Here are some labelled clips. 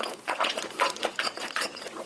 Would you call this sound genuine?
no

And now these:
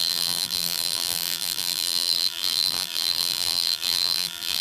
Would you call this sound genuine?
no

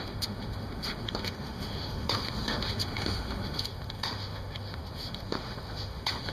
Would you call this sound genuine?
no